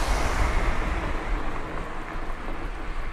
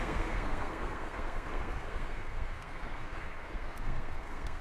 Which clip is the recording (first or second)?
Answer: first